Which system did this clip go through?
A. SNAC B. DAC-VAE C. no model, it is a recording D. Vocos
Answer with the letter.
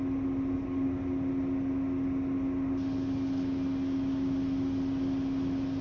C